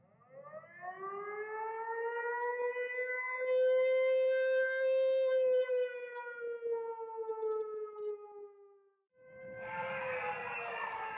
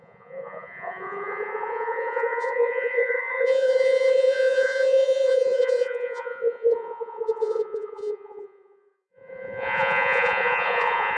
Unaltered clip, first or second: first